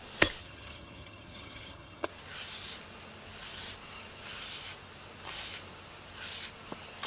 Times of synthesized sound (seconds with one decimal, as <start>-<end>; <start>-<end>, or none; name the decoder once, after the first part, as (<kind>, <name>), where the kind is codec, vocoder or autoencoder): 0.4-2.1 (vocoder, HiFi-GAN)